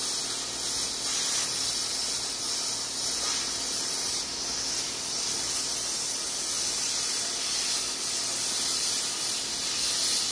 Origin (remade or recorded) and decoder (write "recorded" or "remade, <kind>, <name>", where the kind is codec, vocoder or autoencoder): recorded